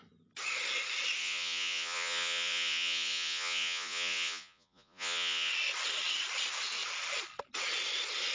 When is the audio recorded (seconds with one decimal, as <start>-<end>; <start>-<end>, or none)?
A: 0.0-1.2; 5.5-8.3